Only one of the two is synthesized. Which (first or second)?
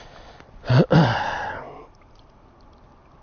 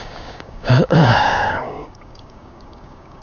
second